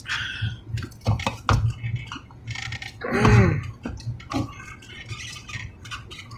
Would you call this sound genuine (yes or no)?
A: yes